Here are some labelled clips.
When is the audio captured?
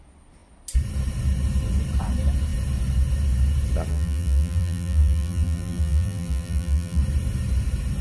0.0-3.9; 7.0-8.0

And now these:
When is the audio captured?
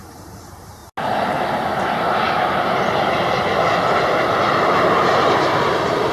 0.8-4.5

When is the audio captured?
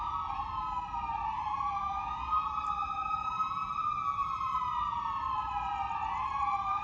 0.0-2.3; 4.6-6.8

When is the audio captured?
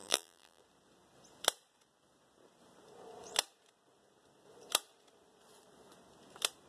0.6-6.7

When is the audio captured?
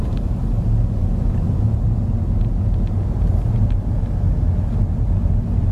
0.0-5.7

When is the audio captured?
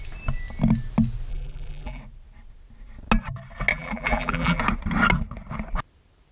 0.0-1.3; 2.0-3.7; 4.6-6.3